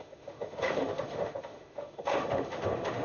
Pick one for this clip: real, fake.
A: fake